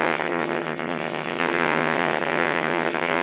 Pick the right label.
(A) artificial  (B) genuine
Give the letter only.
A